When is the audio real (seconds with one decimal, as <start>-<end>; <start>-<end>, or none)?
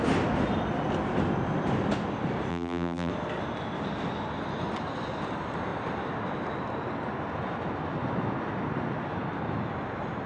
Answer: 0.0-2.5; 3.1-10.3